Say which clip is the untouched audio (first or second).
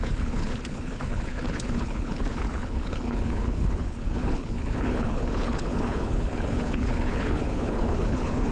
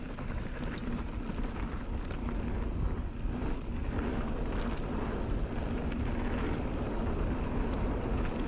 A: second